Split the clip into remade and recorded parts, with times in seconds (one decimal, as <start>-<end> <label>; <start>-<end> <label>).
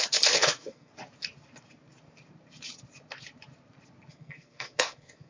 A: 0.0-0.9 remade; 0.9-4.1 recorded; 4.1-5.3 remade